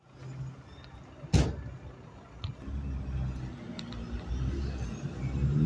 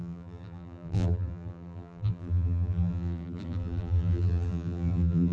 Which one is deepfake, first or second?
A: second